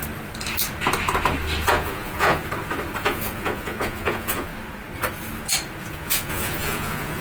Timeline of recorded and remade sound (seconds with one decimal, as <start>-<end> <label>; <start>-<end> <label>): 0.0-1.7 recorded; 1.7-2.4 remade; 2.4-3.0 recorded; 3.0-4.5 remade; 4.5-5.8 recorded; 5.8-7.2 remade